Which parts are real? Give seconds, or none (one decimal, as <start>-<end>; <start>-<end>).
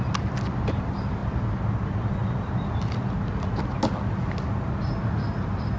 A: 0.0-5.8